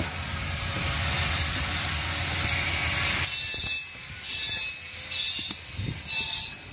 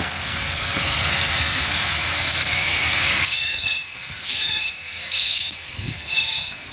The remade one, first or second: second